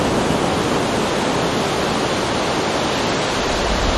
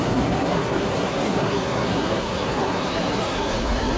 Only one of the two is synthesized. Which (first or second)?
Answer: second